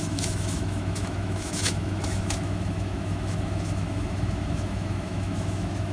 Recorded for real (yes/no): no